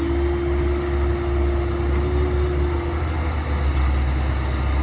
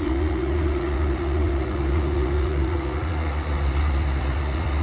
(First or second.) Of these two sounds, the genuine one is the first